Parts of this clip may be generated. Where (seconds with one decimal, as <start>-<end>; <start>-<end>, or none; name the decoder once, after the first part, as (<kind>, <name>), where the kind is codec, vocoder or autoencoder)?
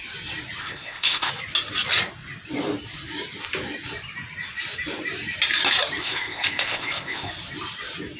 0.6-1.3 (codec, ZipCodec); 6.0-7.3